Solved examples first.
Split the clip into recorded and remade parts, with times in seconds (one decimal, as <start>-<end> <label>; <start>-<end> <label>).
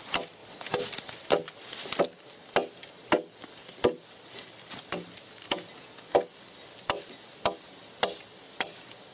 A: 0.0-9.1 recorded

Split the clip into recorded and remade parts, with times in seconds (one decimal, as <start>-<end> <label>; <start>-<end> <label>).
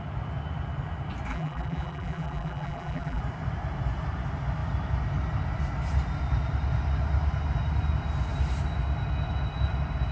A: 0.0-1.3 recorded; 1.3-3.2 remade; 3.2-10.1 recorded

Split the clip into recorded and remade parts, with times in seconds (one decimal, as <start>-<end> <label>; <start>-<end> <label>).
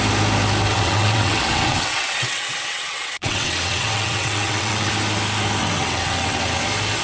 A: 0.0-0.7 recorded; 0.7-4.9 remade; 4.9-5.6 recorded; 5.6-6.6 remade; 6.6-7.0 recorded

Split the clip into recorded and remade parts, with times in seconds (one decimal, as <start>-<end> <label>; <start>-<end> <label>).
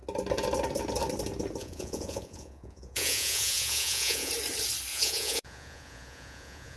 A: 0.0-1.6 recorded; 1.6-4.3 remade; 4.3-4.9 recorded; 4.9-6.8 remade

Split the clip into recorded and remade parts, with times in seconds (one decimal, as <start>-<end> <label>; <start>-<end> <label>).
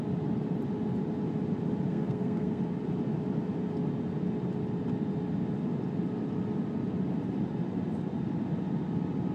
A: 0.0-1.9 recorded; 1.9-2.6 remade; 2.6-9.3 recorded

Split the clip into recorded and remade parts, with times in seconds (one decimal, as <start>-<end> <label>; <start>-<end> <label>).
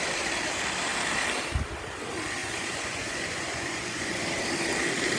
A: 0.0-2.4 recorded; 2.4-4.2 remade; 4.2-5.2 recorded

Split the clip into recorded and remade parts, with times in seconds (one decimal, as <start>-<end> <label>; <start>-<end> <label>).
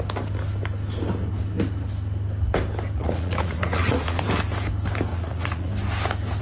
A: 0.0-3.0 recorded; 3.0-4.2 remade; 4.2-5.1 recorded; 5.1-5.7 remade; 5.7-6.4 recorded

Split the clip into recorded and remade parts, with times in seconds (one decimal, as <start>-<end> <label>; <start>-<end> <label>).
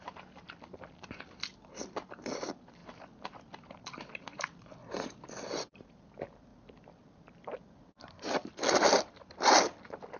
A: 0.0-1.5 remade; 1.5-2.0 recorded; 2.0-2.8 remade; 2.8-3.7 recorded; 3.7-10.2 remade